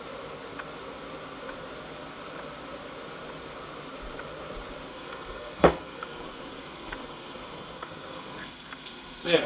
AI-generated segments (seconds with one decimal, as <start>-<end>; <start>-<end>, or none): 4.9-9.5